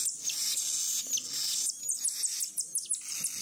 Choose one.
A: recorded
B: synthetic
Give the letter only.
A